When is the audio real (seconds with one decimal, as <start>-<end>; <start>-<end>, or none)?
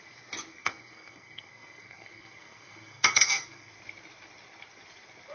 0.0-0.5; 3.7-5.3